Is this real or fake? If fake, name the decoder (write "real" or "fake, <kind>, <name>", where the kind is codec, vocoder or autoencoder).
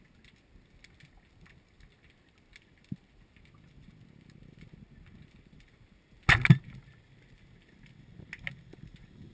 real